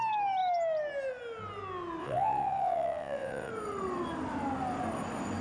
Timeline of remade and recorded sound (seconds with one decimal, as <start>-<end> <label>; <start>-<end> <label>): 0.0-2.0 recorded; 2.0-3.5 remade; 3.5-5.4 recorded